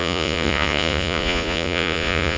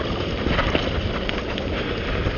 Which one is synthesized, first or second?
first